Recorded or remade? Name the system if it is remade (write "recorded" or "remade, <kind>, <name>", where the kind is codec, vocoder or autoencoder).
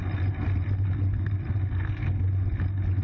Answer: recorded